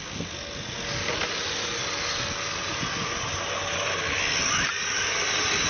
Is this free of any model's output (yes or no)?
yes